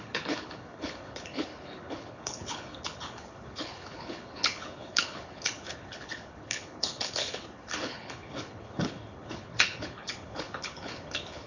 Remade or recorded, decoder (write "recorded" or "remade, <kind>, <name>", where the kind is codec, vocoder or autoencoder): remade, codec, HILCodec